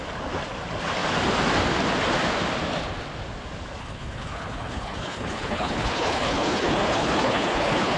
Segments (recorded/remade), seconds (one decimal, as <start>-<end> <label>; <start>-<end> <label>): 0.0-3.8 recorded; 3.8-8.0 remade